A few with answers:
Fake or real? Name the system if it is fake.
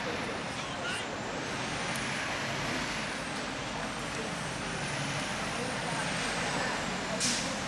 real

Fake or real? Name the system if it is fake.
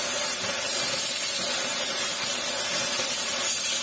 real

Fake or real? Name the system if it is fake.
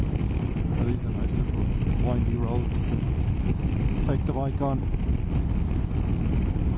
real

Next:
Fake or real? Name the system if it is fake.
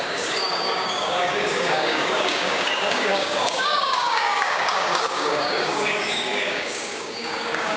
fake, codec, DAC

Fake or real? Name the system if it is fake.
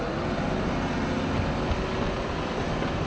real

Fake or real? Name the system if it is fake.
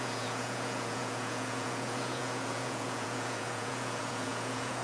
fake, vocoder, Vocos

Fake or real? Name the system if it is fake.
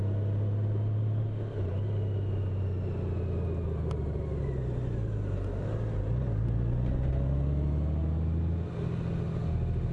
real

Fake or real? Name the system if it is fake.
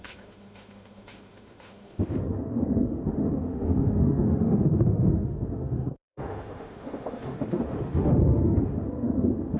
fake, autoencoder, DAC-VAE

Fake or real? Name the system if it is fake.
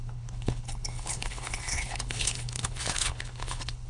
fake, codec, HILCodec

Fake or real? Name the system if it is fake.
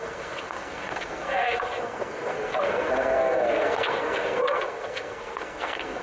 fake, codec, SNAC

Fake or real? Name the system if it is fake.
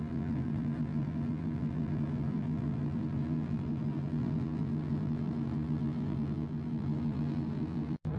fake, vocoder, BigVGAN v2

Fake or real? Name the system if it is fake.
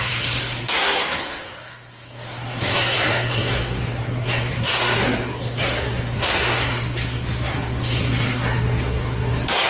fake, codec, SNAC